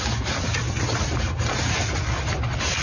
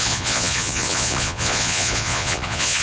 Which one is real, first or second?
first